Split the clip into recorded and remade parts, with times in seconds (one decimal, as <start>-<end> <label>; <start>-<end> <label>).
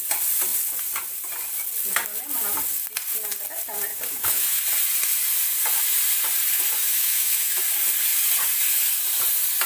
0.0-3.9 recorded; 3.9-4.6 remade; 4.6-6.8 recorded; 6.8-7.6 remade; 7.6-9.7 recorded